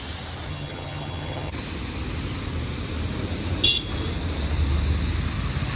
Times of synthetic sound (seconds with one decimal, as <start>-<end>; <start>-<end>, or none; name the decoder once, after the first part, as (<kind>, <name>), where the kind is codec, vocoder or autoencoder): 0.5-1.5 (vocoder, HiFi-GAN)